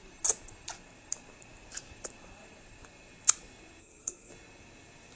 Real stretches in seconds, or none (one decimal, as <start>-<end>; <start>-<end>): 0.0-3.8; 4.3-5.2